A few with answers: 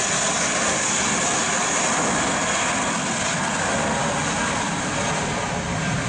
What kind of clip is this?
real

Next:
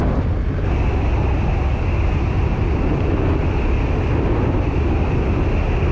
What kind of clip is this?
real